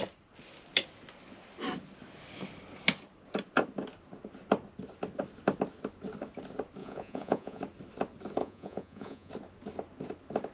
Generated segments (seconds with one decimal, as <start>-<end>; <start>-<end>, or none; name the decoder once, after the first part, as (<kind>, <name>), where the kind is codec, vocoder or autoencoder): 6.8-7.6 (vocoder, Vocos); 8.4-9.3